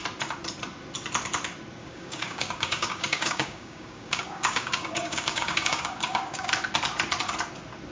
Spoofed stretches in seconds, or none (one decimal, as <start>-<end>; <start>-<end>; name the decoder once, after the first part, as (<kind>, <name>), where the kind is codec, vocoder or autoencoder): 1.8-6.5 (codec, DAC)

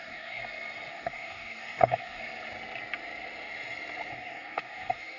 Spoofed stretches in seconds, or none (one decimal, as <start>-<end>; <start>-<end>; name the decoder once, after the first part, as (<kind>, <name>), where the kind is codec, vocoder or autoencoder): 0.0-0.4 (codec, DAC); 0.9-2.2; 4.1-5.2